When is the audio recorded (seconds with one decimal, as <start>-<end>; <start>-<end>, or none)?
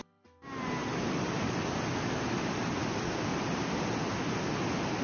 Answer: 0.0-0.8; 1.5-3.3; 3.8-5.0